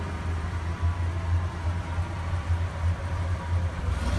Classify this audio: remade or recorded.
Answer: recorded